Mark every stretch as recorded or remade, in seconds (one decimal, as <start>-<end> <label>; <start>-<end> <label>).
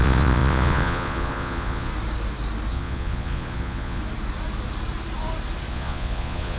0.0-1.9 remade; 1.9-2.7 recorded; 2.7-4.0 remade; 4.0-5.7 recorded; 5.7-6.6 remade